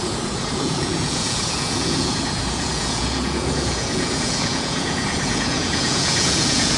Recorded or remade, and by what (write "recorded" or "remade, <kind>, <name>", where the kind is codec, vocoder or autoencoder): remade, vocoder, Vocos